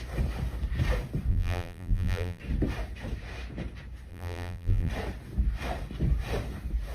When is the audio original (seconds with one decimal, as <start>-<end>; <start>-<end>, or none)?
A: 0.0-1.3; 2.4-4.1; 4.9-6.9